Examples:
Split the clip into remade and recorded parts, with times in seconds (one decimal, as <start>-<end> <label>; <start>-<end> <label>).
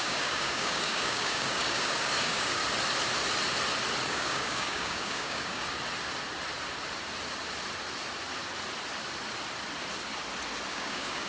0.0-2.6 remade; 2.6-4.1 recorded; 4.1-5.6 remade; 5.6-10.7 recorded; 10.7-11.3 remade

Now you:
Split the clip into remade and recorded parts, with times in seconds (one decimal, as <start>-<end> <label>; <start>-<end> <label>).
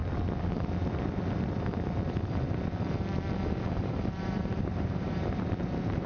0.0-3.7 recorded; 3.7-6.1 remade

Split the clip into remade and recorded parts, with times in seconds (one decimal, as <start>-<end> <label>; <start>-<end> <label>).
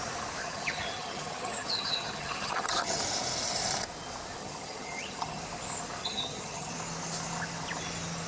0.0-0.4 recorded; 0.4-3.0 remade; 3.0-4.4 recorded; 4.4-5.4 remade; 5.4-6.0 recorded; 6.0-6.7 remade; 6.7-8.3 recorded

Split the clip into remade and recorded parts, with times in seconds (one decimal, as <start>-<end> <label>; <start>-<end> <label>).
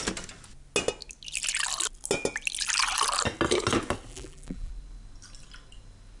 0.0-4.1 recorded; 4.1-4.7 remade; 4.7-6.2 recorded